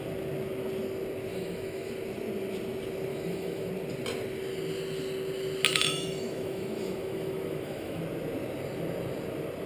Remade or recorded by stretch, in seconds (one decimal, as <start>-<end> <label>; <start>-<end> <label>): 0.0-1.3 recorded; 1.3-1.9 remade; 1.9-3.1 recorded; 3.1-3.7 remade; 3.7-5.7 recorded; 5.7-8.0 remade; 8.0-9.7 recorded